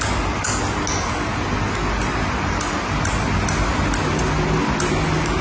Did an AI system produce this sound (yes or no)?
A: no